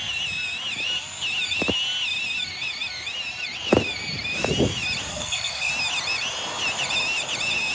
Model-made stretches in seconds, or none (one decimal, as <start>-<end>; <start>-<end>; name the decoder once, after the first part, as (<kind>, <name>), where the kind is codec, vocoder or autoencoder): 5.1-5.7 (codec, SNAC)